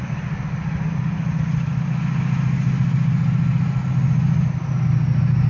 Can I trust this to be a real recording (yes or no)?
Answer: yes